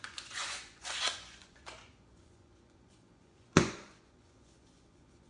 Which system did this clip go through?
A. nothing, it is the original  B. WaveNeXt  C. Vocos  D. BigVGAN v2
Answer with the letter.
C